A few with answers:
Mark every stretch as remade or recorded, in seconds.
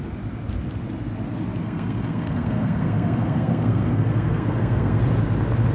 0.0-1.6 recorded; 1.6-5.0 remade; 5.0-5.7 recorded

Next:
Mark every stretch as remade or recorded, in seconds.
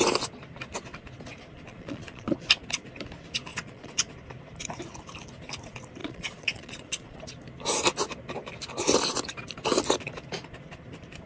0.0-1.7 recorded; 1.7-2.3 remade; 2.3-3.5 recorded; 3.5-4.1 remade; 4.1-6.0 recorded; 6.0-7.2 remade; 7.2-11.3 recorded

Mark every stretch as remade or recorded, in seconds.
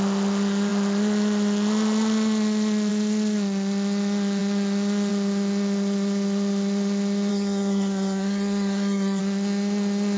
0.0-7.3 recorded; 7.3-9.2 remade; 9.2-10.2 recorded